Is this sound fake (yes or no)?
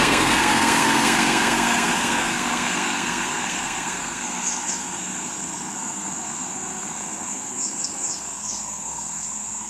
yes